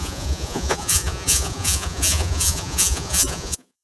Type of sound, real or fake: fake